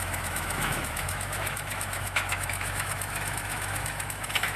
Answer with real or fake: fake